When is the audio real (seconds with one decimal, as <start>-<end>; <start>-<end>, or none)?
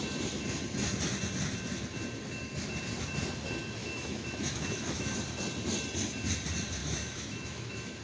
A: 0.0-3.8; 5.2-6.8